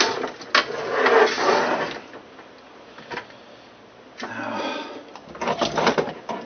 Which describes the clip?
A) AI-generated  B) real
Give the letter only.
B